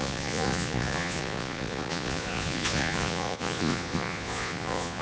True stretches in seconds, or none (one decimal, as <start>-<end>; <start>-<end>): none